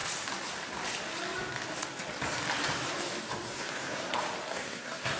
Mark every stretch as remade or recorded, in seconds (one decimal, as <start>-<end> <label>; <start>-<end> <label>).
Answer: 0.0-3.5 recorded; 3.5-4.1 remade; 4.1-4.5 recorded; 4.5-5.2 remade